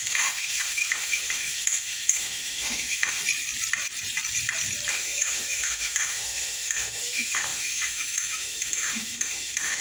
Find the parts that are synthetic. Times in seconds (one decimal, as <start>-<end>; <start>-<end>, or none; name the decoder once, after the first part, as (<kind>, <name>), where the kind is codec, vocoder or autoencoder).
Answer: 0.0-3.2 (autoencoder, DAC-VAE); 4.9-9.8